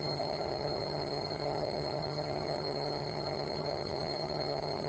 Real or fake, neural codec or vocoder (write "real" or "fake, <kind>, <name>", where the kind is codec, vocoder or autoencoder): fake, vocoder, HiFi-GAN